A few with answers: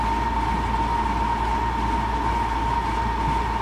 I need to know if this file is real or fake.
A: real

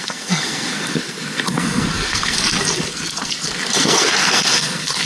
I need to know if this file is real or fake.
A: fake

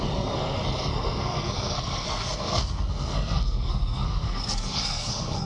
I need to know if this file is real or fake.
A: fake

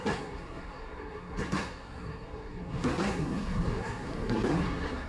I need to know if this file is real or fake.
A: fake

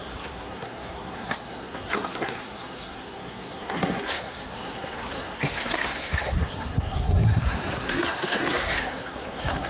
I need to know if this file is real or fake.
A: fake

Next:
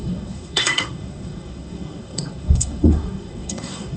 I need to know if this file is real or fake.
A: fake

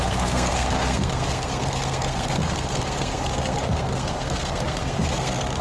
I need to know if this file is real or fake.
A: fake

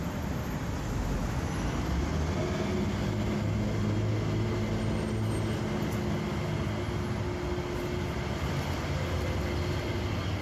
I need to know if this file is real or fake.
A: real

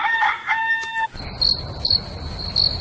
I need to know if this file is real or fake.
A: real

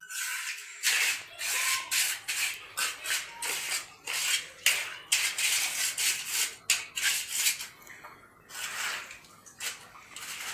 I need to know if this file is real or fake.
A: real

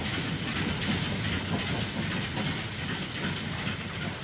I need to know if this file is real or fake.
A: real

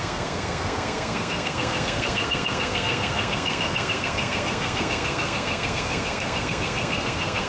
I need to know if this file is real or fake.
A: fake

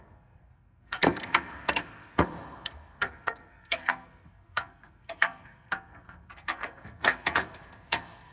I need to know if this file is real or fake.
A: fake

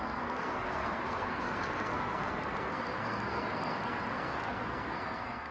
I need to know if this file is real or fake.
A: fake